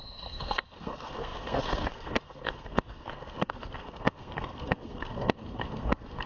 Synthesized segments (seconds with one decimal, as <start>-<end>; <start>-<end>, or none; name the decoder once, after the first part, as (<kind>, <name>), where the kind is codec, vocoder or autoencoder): 0.0-6.3 (codec, SNAC)